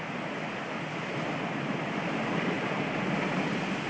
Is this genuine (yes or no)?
yes